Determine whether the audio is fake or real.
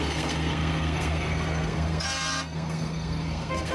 fake